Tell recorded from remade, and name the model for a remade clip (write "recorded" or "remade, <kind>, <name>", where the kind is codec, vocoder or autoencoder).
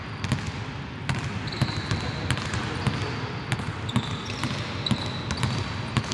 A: recorded